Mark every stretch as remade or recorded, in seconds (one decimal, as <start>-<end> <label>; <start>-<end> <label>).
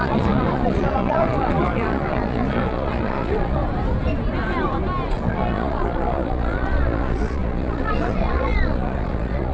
0.0-3.6 remade; 3.6-5.1 recorded; 5.1-9.5 remade